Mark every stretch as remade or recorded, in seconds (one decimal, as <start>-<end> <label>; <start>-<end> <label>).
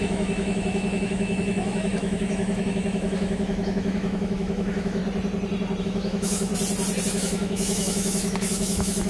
0.0-5.0 remade; 5.0-5.8 recorded; 5.8-6.5 remade; 6.5-7.1 recorded; 7.1-9.1 remade